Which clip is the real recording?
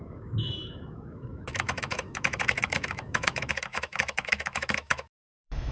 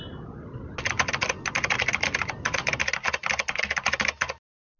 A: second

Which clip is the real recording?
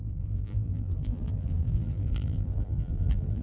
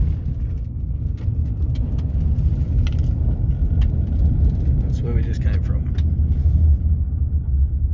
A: second